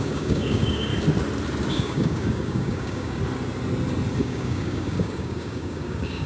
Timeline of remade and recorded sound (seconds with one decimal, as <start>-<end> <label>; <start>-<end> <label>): 0.0-0.9 remade; 0.9-1.7 recorded; 1.7-3.2 remade; 3.2-4.2 recorded; 4.2-6.3 remade